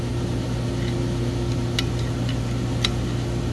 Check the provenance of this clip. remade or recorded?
recorded